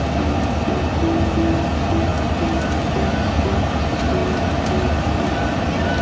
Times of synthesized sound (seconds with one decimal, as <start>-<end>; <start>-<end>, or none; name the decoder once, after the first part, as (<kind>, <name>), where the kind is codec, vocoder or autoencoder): none